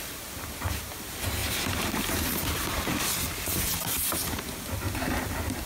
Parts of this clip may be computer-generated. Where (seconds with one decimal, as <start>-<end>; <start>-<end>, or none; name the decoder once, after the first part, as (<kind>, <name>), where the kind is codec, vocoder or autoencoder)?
1.4-4.4 (vocoder, BigVGAN v2)

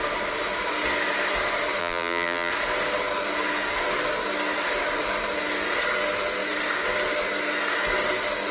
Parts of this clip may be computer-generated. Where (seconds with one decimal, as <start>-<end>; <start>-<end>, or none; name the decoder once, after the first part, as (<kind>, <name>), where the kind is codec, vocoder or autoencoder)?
1.8-2.5 (vocoder, BigVGAN v2)

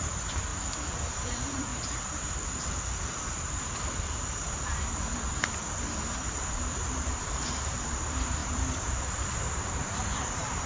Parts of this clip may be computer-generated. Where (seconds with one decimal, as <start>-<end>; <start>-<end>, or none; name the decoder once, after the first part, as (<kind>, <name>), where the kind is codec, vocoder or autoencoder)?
0.0-0.5 (vocoder, BigVGAN v2); 1.1-1.7; 6.9-10.7

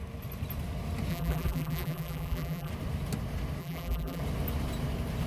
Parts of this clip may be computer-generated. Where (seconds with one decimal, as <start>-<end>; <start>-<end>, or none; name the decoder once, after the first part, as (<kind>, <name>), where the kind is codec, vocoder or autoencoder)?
1.1-2.7 (vocoder, BigVGAN v2); 3.6-4.2

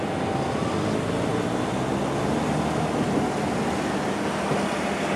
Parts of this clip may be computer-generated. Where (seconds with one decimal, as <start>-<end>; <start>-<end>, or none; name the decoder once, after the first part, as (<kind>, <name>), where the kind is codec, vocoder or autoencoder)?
none

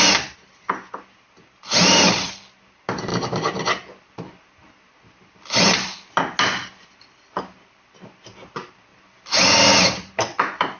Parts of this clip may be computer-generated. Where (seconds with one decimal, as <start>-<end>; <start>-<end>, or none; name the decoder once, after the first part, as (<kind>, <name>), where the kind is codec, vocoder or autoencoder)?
none

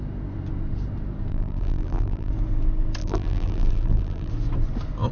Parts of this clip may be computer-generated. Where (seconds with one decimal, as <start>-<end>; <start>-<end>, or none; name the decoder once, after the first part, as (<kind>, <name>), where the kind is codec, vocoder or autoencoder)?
1.3-2.3 (vocoder, BigVGAN v2); 3.0-4.3

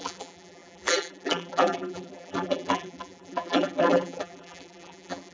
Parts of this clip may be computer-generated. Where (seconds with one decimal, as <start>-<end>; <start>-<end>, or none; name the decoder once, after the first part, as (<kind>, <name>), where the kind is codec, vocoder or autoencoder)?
0.0-5.3 (vocoder, BigVGAN v2)